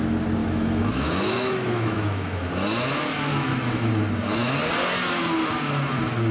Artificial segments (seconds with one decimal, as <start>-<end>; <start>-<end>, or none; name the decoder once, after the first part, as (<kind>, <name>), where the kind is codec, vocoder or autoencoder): 0.4-2.5 (autoencoder, DAC-VAE); 3.3-3.9